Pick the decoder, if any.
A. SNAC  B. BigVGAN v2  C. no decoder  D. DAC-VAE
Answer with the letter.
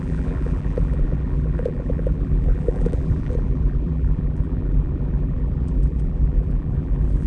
B